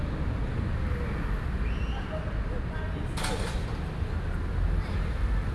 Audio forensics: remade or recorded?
recorded